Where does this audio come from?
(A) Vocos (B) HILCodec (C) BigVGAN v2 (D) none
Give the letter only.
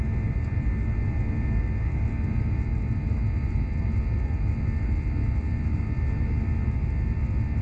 D